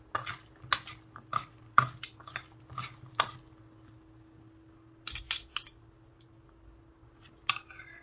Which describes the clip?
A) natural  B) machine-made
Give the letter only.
A